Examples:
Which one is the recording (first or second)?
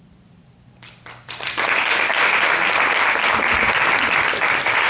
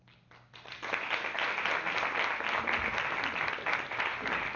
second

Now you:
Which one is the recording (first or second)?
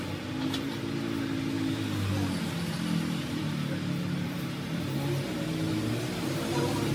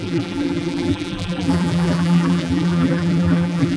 first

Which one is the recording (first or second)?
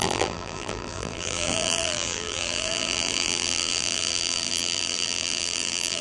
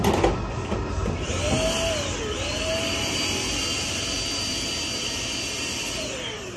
second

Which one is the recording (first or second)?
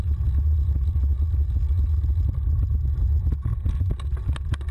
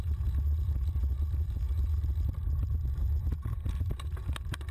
first